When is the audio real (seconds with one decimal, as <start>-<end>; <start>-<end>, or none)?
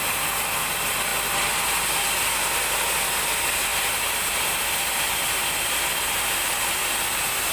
0.0-7.5